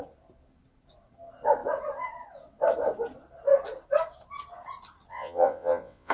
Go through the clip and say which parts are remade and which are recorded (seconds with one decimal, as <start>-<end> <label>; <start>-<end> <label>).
0.0-5.1 recorded; 5.1-6.1 remade